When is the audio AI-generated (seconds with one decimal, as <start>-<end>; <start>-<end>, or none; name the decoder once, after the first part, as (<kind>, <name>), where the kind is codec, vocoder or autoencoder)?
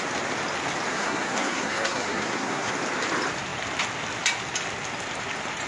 0.9-2.7 (codec, SNAC)